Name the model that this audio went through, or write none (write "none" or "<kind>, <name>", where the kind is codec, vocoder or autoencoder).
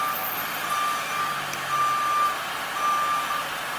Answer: none